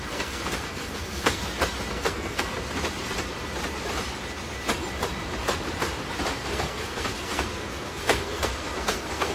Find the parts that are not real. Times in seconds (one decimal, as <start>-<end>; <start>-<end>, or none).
0.0-1.4; 1.9-2.5; 6.3-9.3